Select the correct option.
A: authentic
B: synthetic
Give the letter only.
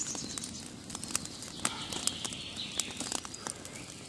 A